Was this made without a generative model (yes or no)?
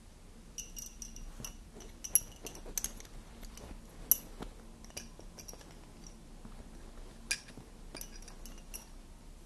yes